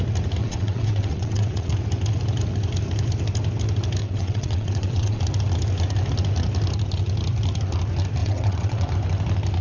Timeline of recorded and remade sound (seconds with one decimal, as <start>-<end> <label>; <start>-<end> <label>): 0.0-0.4 recorded; 0.4-1.7 remade; 1.7-4.0 recorded; 4.0-5.2 remade; 5.2-8.2 recorded; 8.2-8.9 remade; 8.9-9.6 recorded